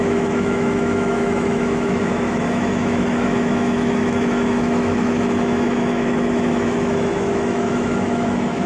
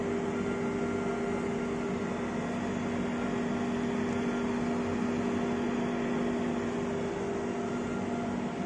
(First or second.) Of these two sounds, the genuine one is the second